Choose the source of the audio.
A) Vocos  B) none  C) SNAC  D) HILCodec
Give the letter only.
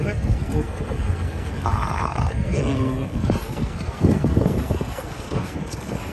C